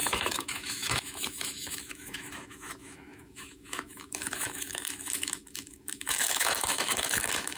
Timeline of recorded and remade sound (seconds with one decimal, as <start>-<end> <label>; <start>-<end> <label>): 0.0-7.6 remade